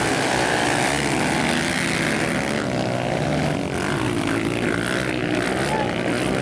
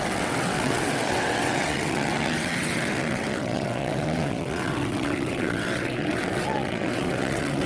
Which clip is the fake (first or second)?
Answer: second